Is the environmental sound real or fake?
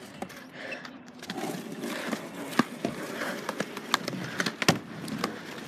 real